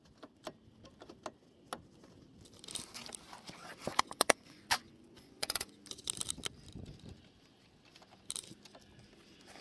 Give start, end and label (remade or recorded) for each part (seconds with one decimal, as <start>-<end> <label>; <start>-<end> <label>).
0.0-3.9 recorded; 3.9-5.7 remade; 5.7-9.6 recorded